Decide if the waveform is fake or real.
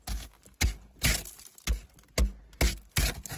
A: real